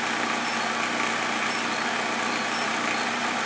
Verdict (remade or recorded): recorded